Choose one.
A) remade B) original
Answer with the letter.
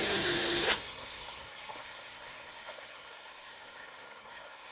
A